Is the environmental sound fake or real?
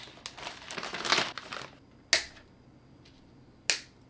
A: real